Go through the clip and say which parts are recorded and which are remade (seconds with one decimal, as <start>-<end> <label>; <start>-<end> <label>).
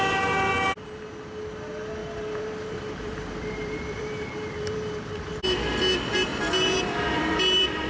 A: 0.0-2.0 recorded; 2.0-5.3 remade; 5.3-6.3 recorded; 6.3-7.9 remade